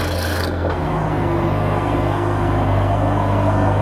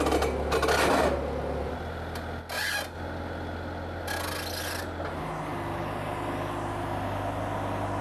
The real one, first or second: second